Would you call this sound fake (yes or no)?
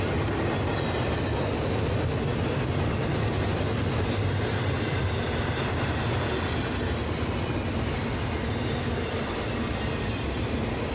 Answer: no